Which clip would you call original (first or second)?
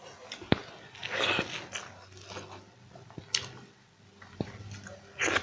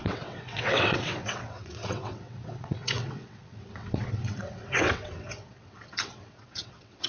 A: first